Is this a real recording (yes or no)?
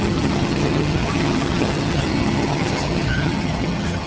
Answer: no